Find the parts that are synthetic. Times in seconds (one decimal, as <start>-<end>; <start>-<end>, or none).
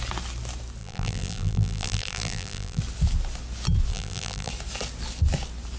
0.8-2.8; 3.9-4.5